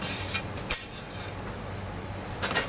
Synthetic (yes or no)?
no